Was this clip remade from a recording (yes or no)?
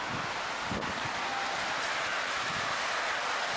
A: no